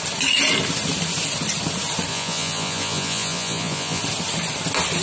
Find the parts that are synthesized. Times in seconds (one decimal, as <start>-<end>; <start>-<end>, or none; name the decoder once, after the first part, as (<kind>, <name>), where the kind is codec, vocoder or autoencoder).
2.1-4.0 (vocoder, Vocos)